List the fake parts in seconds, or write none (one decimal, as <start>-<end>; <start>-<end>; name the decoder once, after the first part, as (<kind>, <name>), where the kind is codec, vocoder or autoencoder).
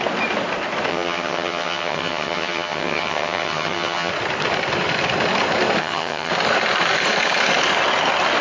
0.9-4.1 (vocoder, HiFi-GAN); 5.8-6.3